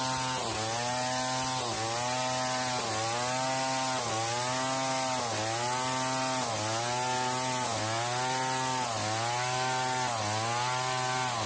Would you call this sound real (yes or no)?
yes